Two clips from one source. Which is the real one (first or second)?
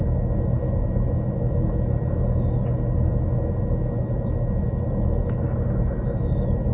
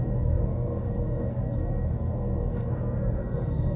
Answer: first